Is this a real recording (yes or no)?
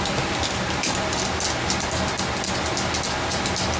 yes